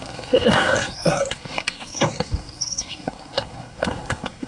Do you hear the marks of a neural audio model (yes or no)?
yes